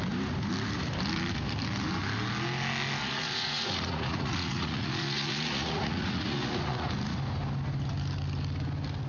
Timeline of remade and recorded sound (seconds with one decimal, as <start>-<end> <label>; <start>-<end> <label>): 0.0-3.0 recorded; 3.0-6.9 remade; 6.9-9.1 recorded